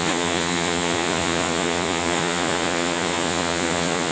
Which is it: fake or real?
fake